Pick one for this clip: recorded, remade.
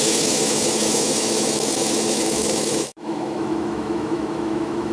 remade